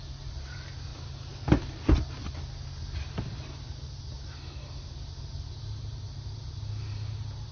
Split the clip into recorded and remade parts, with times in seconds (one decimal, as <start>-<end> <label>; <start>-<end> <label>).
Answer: 0.0-7.5 recorded